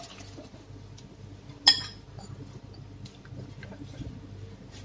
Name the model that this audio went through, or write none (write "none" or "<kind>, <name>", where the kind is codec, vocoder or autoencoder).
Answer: none